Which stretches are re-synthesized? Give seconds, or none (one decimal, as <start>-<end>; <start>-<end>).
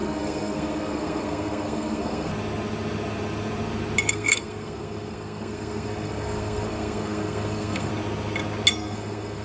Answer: 0.0-2.3; 4.1-7.9; 8.7-9.4